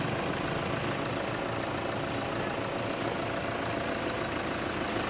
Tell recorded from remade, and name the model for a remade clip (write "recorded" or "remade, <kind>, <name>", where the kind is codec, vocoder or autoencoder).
recorded